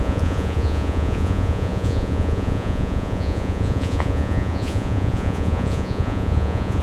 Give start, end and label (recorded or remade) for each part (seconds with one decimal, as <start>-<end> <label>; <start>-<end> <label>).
0.0-6.8 remade